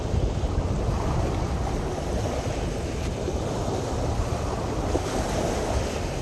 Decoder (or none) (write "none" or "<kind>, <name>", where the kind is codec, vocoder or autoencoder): none